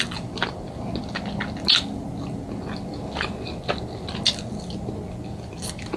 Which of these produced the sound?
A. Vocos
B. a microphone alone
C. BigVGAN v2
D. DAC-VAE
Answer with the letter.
B